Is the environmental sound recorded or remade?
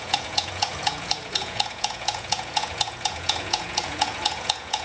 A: remade